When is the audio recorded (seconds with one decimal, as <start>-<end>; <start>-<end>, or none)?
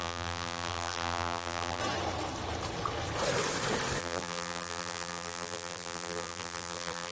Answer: 1.8-4.0